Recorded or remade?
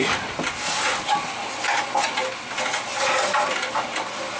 recorded